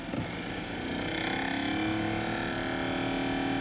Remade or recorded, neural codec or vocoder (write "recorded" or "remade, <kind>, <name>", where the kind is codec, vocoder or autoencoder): recorded